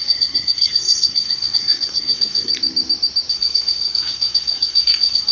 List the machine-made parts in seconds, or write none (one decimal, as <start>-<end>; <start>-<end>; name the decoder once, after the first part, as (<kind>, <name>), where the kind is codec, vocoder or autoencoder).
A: 0.0-2.5 (codec, SNAC); 3.3-5.3